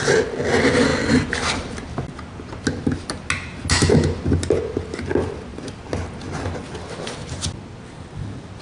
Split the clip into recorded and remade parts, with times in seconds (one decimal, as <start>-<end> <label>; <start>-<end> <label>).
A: 0.0-8.6 recorded